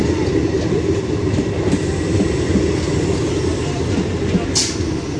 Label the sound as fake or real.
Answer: real